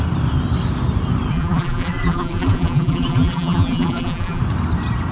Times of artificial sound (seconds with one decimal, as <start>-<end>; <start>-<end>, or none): 1.3-4.4